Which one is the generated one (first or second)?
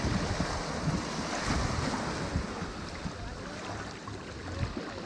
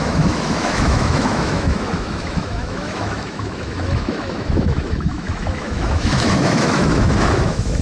second